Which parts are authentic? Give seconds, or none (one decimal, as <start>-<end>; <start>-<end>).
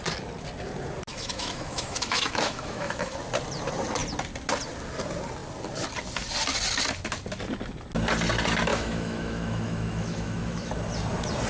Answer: 0.0-1.1; 3.2-8.7; 10.7-11.5